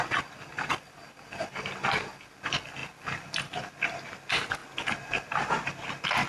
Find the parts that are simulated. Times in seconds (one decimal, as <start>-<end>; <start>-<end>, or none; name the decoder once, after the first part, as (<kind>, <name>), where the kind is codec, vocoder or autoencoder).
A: 0.0-2.8 (vocoder, BigVGAN v2); 3.4-4.6; 5.3-6.3